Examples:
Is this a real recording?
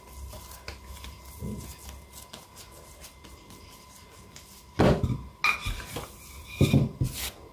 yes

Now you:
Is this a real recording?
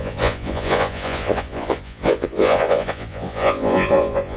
no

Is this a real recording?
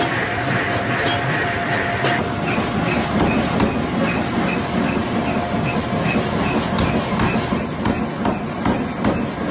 yes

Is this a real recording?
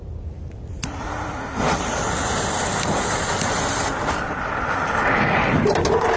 yes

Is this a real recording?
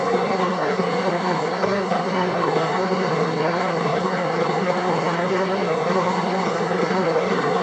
no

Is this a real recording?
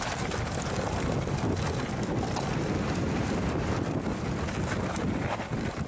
yes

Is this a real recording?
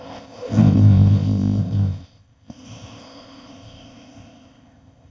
no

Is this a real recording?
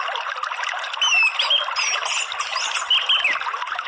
yes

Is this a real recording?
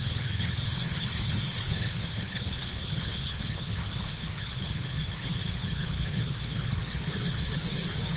no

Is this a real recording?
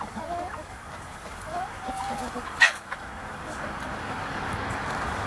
no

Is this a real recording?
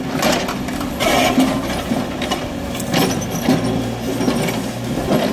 yes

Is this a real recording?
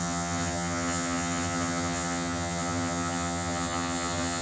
no